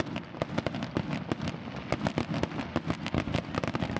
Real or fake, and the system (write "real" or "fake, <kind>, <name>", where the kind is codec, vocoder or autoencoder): real